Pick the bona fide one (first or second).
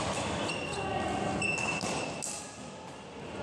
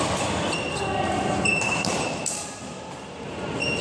first